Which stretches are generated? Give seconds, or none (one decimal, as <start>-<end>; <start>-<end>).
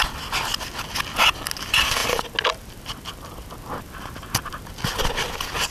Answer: none